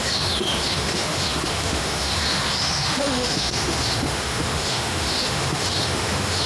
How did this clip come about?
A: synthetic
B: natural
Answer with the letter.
A